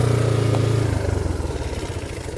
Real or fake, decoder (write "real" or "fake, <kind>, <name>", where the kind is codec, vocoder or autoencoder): real